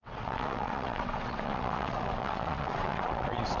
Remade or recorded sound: remade